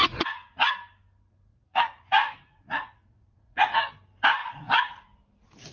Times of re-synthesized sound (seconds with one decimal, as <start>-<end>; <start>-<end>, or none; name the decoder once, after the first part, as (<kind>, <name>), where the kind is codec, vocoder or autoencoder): 0.0-0.7 (vocoder, Vocos); 1.5-3.9; 4.4-4.9